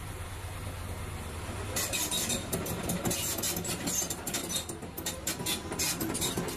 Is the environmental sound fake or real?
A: real